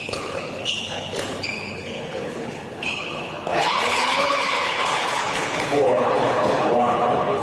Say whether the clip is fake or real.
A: fake